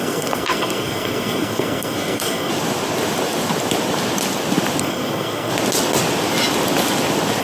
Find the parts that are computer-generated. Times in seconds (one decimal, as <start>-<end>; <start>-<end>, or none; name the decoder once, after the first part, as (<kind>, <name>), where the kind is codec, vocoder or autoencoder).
0.0-2.5 (codec, SNAC); 4.8-5.5